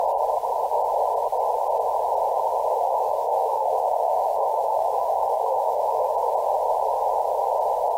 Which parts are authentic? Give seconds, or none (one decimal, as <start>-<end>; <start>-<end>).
0.0-2.7; 6.1-8.0